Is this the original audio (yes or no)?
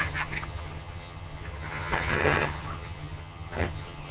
no